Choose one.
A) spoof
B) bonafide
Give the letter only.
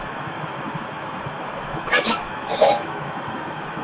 A